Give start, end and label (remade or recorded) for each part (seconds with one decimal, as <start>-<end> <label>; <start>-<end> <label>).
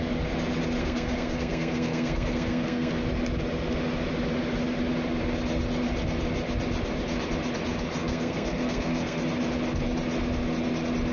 0.0-0.8 recorded; 0.8-2.9 remade; 2.9-8.0 recorded; 8.0-9.2 remade; 9.2-11.1 recorded